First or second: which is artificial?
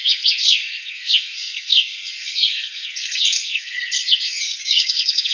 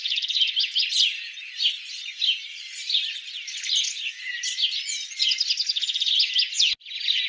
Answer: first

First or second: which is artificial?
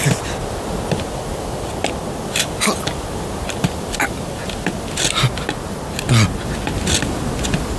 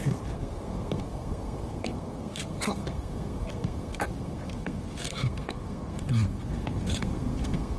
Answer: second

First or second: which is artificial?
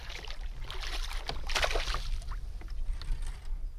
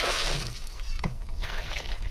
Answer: second